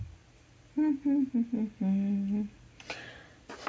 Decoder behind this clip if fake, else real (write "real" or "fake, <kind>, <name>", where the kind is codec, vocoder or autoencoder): real